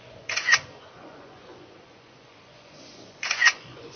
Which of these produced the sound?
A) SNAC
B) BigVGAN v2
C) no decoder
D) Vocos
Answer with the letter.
D